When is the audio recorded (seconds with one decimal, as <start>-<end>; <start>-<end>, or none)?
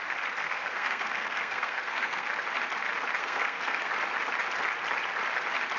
0.0-0.4; 2.4-3.2; 3.9-5.8